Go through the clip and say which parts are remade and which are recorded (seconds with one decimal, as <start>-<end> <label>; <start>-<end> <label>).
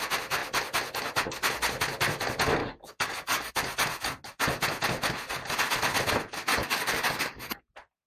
0.0-2.6 recorded; 2.6-3.5 remade; 3.5-6.5 recorded; 6.5-7.6 remade; 7.6-8.1 recorded